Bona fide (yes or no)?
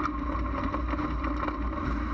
yes